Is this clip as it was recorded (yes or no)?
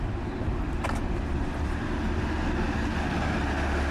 yes